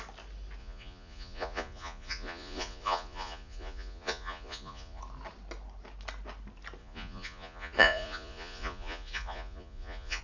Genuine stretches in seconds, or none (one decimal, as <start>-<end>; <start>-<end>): 0.0-0.6; 5.0-6.8